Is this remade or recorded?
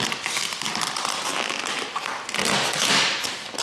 recorded